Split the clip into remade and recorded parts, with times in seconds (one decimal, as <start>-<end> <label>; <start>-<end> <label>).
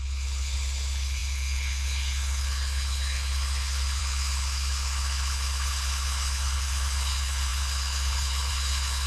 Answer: 0.0-9.1 remade